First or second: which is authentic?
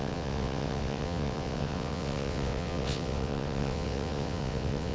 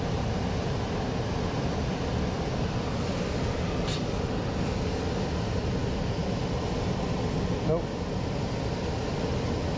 second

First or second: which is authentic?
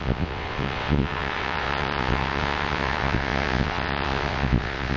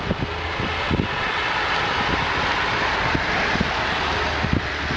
second